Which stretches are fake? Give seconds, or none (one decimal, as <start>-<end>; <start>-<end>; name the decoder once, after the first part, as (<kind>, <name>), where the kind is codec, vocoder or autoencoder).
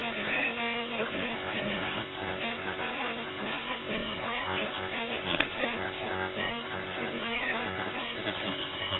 0.0-9.0 (codec, SNAC)